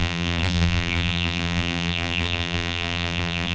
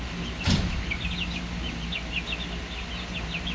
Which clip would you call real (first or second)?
second